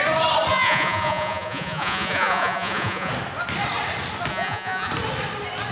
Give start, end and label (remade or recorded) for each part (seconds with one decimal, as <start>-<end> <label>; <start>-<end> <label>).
0.0-0.5 recorded; 0.5-3.1 remade; 3.1-4.3 recorded; 4.3-4.9 remade; 4.9-5.7 recorded